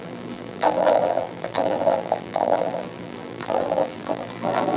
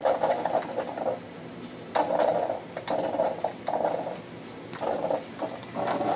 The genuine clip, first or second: second